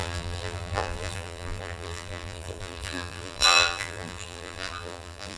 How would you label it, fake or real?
fake